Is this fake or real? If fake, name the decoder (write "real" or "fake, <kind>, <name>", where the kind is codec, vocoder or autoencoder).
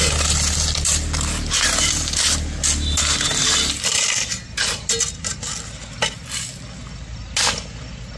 real